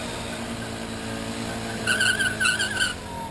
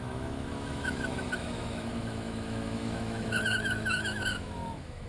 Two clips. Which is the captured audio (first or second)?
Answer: first